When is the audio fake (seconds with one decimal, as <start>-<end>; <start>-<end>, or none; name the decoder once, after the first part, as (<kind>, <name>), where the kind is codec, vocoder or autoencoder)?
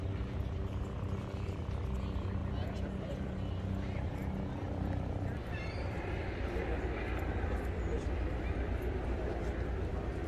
2.4-3.5 (vocoder, BigVGAN v2)